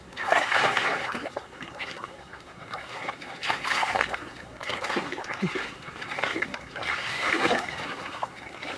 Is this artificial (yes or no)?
yes